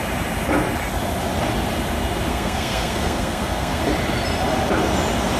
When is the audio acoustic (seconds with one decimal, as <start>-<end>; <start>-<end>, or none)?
0.0-2.3; 3.8-5.4